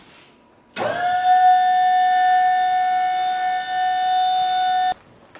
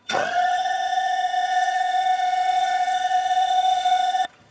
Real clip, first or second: first